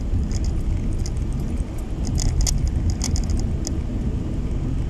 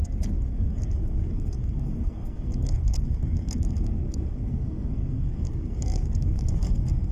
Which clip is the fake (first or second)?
second